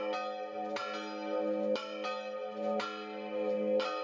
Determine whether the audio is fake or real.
real